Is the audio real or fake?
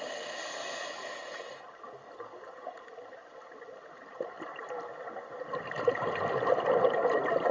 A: real